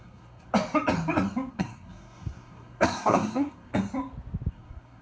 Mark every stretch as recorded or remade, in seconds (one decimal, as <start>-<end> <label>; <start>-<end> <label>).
0.0-0.5 remade; 0.5-1.5 recorded; 1.5-3.7 remade; 3.7-4.5 recorded; 4.5-5.0 remade